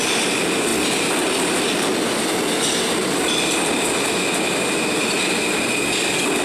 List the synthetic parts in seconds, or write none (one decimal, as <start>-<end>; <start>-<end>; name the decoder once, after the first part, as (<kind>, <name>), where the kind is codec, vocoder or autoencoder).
none